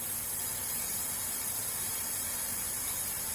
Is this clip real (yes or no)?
no